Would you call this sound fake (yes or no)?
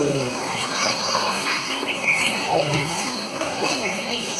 yes